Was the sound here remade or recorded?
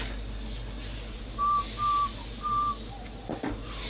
recorded